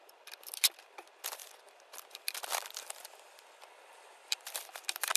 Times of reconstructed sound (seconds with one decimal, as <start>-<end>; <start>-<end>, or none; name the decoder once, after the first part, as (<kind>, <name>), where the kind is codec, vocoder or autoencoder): 0.0-5.2 (vocoder, BigVGAN v2)